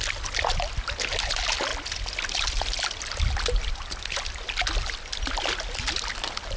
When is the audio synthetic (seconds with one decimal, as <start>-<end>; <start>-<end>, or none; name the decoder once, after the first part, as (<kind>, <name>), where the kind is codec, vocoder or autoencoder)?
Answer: none